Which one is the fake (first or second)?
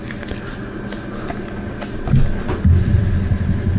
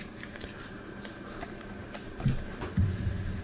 second